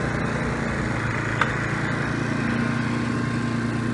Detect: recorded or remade recorded